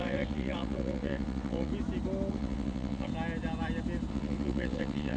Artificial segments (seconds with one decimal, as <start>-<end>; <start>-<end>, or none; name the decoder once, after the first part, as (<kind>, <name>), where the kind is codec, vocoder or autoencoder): 0.0-1.7 (vocoder, WaveNeXt); 2.3-3.1; 4.1-5.2